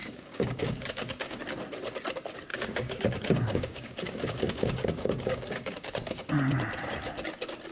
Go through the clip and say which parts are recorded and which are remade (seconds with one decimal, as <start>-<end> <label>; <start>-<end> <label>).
0.0-1.4 remade; 1.4-2.5 recorded; 2.5-6.3 remade; 6.3-7.7 recorded